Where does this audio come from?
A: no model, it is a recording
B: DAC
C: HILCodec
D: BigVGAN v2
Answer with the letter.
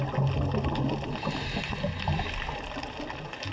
A